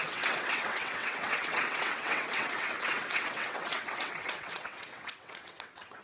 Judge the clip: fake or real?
fake